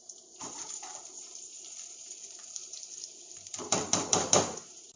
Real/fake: fake